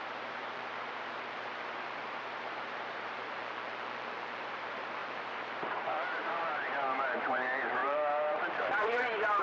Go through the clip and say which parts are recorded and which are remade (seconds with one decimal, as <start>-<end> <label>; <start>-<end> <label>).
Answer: 0.0-3.4 remade; 3.4-4.4 recorded; 4.4-9.4 remade